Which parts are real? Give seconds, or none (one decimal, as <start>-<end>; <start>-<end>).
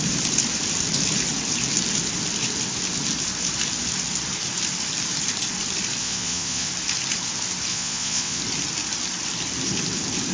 0.0-6.0; 6.7-7.7; 8.4-10.3